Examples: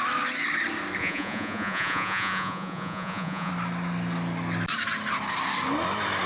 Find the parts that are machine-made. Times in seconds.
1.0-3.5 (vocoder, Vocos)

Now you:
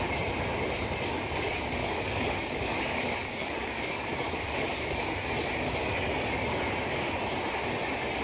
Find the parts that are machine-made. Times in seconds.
1.8-5.0 (codec, DAC)

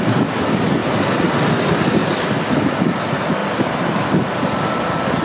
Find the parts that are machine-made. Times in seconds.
0.8-1.3 (vocoder, BigVGAN v2); 2.0-2.9; 3.4-4.3

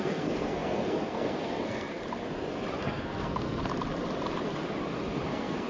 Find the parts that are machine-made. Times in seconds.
0.0-2.0 (codec, SNAC); 2.8-3.6; 5.3-5.7